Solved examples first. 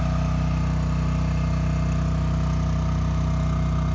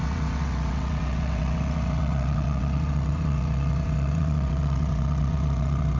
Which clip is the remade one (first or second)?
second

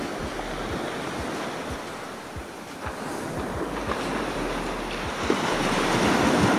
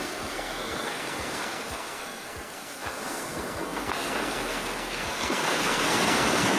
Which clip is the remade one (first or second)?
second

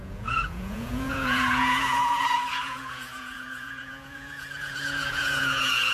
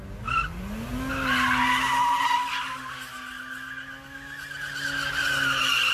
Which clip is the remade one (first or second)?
first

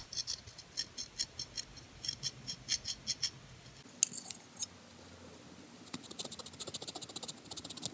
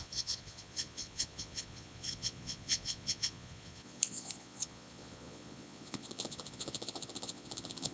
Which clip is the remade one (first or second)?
second